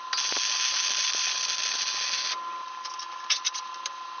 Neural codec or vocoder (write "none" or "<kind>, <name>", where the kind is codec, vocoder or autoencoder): none